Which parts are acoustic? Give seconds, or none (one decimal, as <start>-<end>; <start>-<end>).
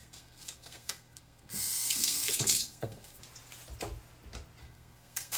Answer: 3.2-4.6